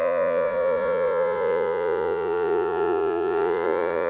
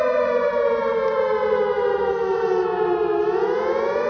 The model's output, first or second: first